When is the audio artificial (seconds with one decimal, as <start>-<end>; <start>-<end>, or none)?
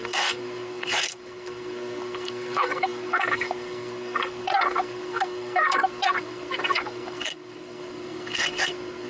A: 0.0-9.1